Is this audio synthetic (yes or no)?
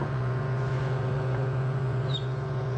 yes